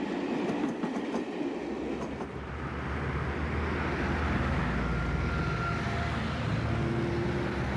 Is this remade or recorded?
recorded